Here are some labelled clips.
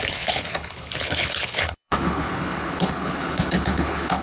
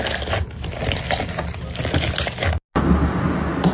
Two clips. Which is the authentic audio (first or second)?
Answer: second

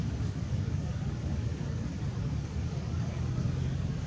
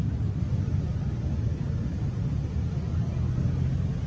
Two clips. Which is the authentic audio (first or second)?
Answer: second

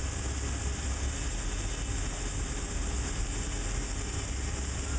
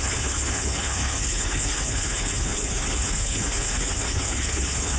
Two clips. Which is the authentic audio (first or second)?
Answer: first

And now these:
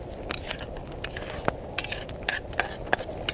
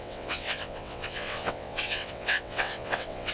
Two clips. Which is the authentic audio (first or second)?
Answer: first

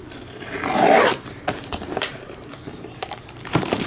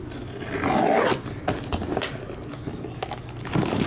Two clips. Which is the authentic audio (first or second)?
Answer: second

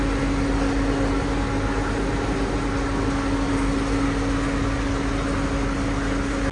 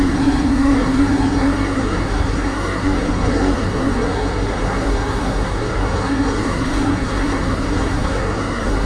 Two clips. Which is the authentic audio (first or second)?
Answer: first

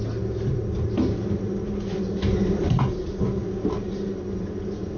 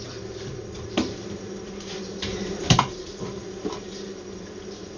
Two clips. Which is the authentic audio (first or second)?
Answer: first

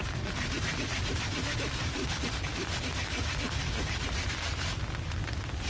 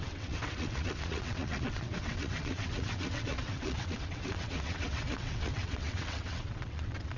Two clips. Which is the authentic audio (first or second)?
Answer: first